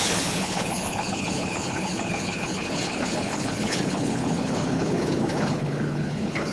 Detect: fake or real fake